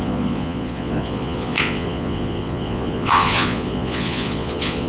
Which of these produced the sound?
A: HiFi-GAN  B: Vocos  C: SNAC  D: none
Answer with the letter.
B